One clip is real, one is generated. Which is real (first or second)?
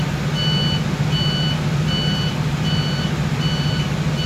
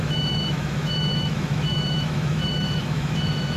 first